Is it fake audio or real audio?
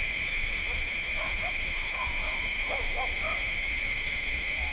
fake